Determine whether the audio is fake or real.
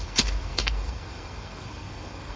fake